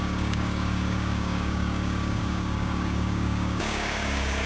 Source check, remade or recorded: remade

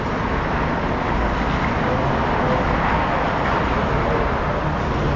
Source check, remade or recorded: recorded